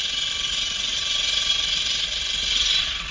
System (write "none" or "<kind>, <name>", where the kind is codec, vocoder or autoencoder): none